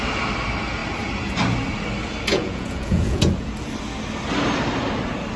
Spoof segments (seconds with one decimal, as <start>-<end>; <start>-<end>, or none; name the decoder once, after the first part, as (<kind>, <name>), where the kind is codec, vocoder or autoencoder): 2.3-3.3 (vocoder, Vocos)